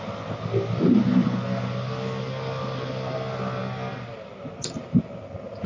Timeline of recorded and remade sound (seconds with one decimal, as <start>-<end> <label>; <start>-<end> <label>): 0.0-5.7 recorded